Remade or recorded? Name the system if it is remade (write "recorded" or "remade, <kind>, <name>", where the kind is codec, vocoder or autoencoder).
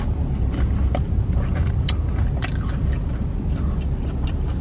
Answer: recorded